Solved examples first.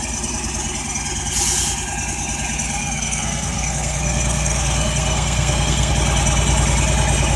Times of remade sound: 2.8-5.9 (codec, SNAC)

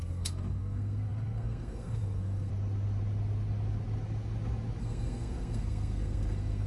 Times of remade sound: 0.0-2.5 (codec, SNAC); 4.8-6.7

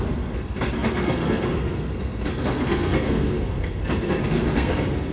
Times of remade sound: 0.0-5.1 (codec, SNAC)